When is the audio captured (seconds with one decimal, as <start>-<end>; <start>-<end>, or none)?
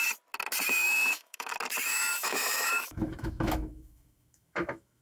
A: 0.0-0.8; 1.5-1.9